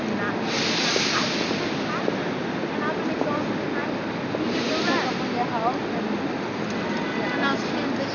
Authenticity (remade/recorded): recorded